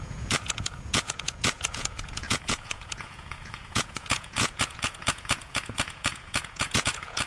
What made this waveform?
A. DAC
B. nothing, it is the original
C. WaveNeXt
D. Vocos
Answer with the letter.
D